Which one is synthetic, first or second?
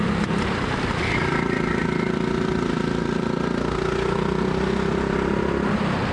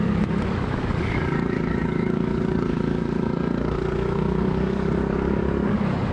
second